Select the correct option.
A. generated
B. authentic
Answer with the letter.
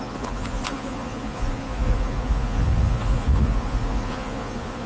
A